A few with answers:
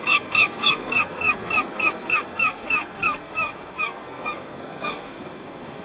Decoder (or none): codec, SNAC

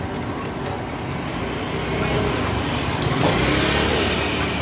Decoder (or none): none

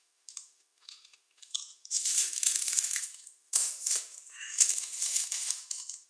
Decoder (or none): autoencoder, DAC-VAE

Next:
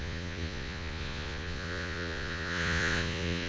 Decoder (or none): vocoder, Vocos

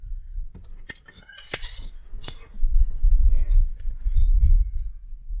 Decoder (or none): none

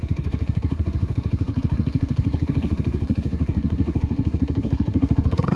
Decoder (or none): codec, SNAC